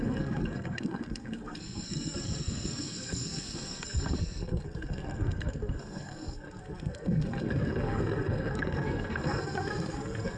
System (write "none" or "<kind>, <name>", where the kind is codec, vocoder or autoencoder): codec, SNAC